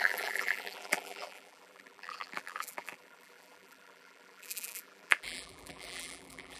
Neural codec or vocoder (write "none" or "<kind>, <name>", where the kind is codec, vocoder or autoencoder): vocoder, BigVGAN v2